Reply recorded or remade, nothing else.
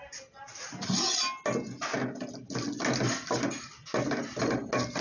recorded